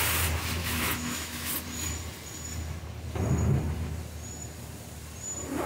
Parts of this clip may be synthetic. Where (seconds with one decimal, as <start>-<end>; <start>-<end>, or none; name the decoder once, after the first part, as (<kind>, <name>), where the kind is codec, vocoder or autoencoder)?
0.6-1.5 (autoencoder, DAC-VAE)